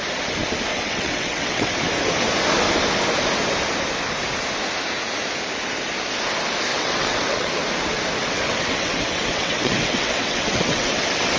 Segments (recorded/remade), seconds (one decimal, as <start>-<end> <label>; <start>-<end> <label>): 0.0-0.7 recorded; 0.7-1.7 remade; 1.7-6.7 recorded; 6.7-7.5 remade; 7.5-8.2 recorded; 8.2-11.4 remade